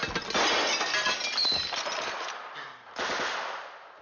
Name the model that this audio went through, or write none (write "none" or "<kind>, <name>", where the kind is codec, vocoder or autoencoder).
none